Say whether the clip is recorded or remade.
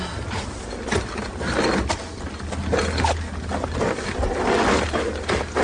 recorded